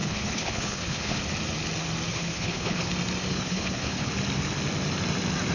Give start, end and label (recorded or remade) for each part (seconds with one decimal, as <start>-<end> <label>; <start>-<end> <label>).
0.0-1.2 remade; 1.2-2.1 recorded; 2.1-2.9 remade; 2.9-3.3 recorded; 3.3-4.1 remade; 4.1-5.5 recorded